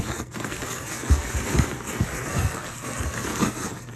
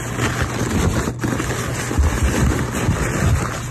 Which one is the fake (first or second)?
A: first